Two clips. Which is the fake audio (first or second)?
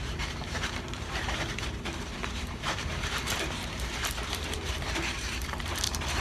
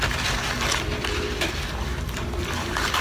first